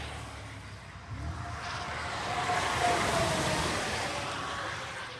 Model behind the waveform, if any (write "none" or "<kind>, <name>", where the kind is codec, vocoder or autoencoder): none